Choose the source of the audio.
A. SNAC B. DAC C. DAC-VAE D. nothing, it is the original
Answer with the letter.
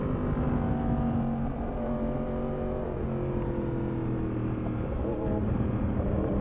D